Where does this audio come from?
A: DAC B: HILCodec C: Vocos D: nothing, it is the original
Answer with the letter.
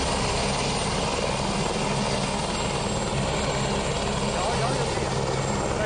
D